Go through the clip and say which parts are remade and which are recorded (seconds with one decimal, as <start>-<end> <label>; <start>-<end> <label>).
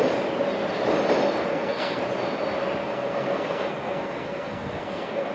0.0-1.5 recorded; 1.5-2.0 remade; 2.0-2.8 recorded; 2.8-5.3 remade